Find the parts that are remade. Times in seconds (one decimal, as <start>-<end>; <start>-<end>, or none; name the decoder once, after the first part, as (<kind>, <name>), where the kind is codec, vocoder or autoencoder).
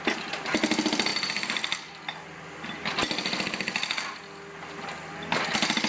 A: none